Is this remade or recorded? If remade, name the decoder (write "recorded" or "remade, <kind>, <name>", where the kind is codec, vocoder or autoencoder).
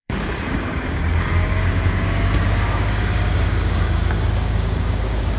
remade, codec, DAC